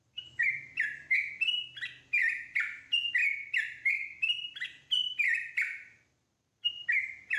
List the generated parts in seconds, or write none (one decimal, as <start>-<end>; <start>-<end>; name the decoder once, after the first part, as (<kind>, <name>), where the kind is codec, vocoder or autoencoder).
3.2-5.5 (vocoder, BigVGAN v2)